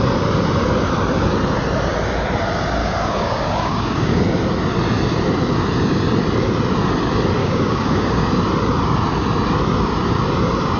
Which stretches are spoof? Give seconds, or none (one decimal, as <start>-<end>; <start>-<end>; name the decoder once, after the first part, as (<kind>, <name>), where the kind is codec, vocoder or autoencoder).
2.8-4.2 (codec, DAC); 7.4-8.3